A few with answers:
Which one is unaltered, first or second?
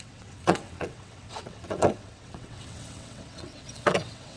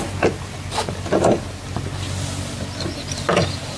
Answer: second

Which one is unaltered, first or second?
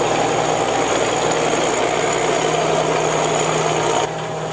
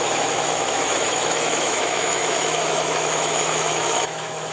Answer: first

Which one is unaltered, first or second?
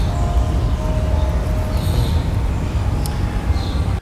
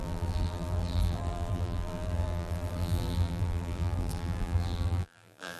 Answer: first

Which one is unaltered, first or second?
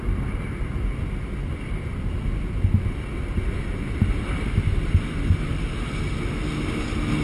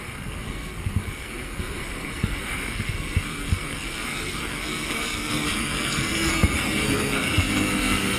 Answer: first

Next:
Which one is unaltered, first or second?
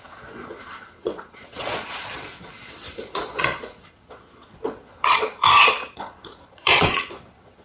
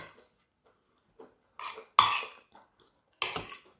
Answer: second